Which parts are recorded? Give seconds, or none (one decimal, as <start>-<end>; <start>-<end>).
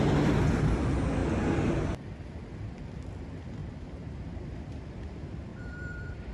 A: 0.0-3.6; 4.2-5.5